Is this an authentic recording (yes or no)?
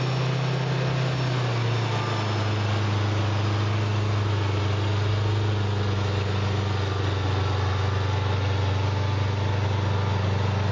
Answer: yes